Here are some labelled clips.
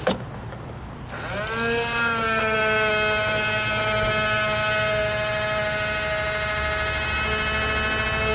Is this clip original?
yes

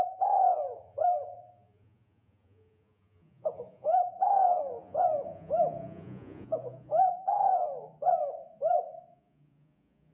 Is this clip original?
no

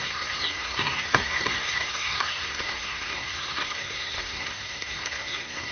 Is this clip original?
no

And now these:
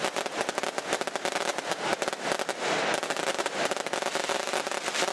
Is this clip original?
yes